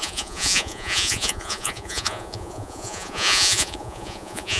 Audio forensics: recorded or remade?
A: remade